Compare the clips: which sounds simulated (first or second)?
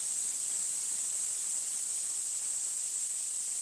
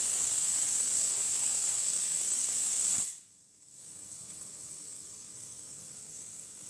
second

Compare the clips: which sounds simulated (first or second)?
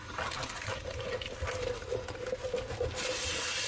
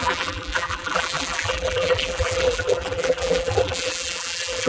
second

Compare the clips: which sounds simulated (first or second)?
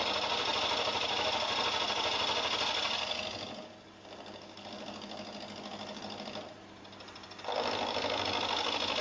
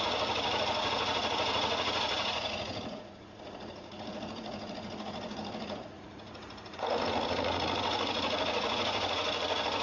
second